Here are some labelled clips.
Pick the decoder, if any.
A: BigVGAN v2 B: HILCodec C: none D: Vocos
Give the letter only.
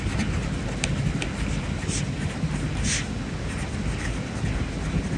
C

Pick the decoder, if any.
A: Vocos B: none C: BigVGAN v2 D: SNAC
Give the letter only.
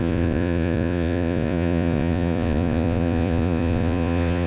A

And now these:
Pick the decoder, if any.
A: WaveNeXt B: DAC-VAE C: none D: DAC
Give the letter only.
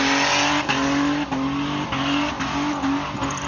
C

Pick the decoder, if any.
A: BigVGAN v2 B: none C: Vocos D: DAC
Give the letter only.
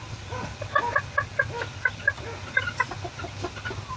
B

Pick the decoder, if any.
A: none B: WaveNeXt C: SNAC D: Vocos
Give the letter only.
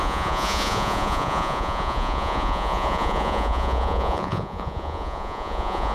D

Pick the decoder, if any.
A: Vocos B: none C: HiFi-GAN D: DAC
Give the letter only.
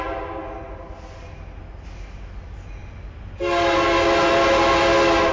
B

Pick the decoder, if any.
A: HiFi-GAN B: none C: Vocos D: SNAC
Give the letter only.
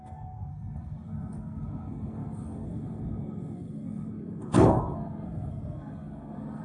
D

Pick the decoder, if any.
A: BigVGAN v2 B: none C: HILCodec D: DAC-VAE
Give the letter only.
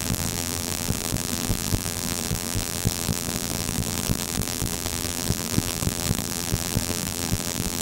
A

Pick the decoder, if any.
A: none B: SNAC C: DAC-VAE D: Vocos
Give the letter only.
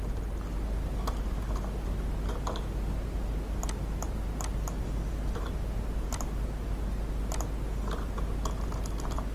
A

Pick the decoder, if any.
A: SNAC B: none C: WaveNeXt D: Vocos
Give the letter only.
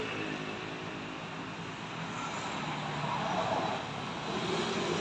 B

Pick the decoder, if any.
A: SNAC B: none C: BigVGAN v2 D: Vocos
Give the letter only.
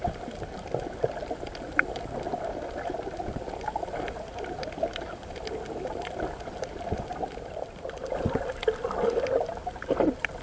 B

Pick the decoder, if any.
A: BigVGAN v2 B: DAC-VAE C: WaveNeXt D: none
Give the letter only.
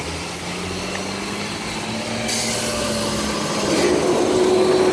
D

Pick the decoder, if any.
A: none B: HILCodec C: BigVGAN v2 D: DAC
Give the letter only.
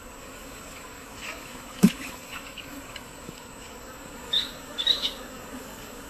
D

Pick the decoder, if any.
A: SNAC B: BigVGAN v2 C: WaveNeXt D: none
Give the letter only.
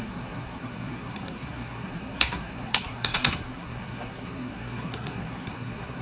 A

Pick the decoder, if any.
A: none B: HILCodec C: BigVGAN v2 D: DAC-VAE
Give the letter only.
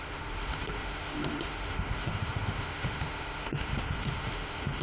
D